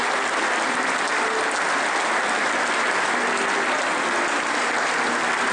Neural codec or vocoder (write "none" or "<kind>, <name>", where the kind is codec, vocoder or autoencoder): none